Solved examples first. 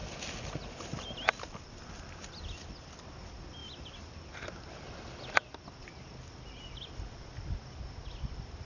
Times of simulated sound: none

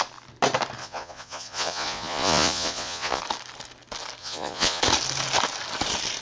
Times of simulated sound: 0.8-3.2 (vocoder, Vocos); 4.2-4.8

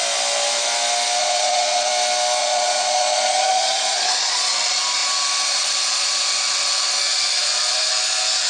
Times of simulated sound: 1.2-1.9 (vocoder, Vocos); 2.4-4.5

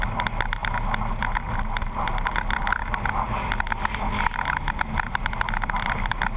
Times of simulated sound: none